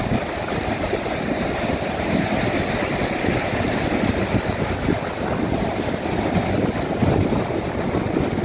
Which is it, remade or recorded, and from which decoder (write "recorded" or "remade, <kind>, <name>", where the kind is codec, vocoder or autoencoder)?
recorded